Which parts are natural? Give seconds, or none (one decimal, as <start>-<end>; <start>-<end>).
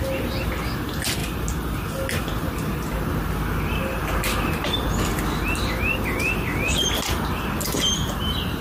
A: 0.0-8.6